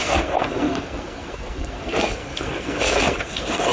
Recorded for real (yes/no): no